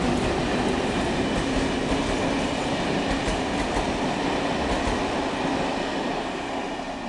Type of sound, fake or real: real